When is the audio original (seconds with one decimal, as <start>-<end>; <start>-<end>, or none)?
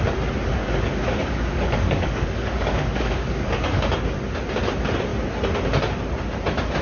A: 0.0-0.6; 3.9-6.8